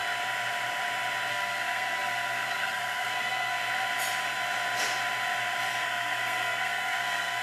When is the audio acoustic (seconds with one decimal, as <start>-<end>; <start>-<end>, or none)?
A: 0.0-1.3; 3.6-5.8